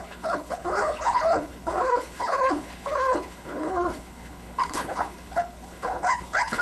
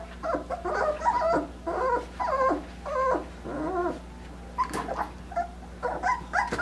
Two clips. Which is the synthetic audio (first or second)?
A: first